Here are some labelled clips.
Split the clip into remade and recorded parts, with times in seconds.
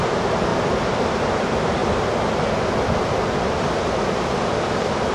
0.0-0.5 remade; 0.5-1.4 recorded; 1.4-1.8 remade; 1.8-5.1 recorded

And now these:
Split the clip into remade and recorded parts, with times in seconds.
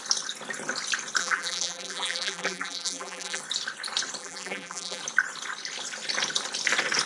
0.0-1.2 recorded; 1.2-3.4 remade; 3.4-4.2 recorded; 4.2-5.0 remade; 5.0-7.1 recorded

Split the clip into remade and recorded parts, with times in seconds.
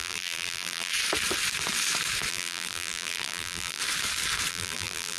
0.0-0.9 remade; 0.9-2.3 recorded; 2.3-3.8 remade; 3.8-4.5 recorded; 4.5-5.2 remade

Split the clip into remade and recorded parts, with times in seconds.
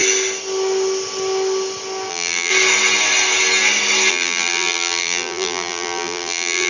0.0-2.1 recorded; 2.1-2.5 remade; 2.5-4.1 recorded; 4.1-6.7 remade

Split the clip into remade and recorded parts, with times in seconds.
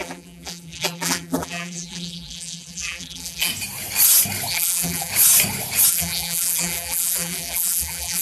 0.0-3.5 remade; 3.5-4.5 recorded; 4.5-5.1 remade; 5.1-5.9 recorded; 5.9-8.2 remade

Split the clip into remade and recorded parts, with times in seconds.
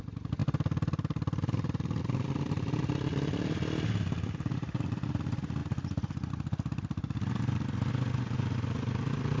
0.0-9.4 recorded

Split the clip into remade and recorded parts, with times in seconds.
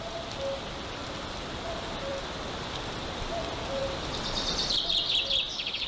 0.0-1.0 remade; 1.0-1.6 recorded; 1.6-2.1 remade; 2.1-2.7 recorded; 2.7-5.9 remade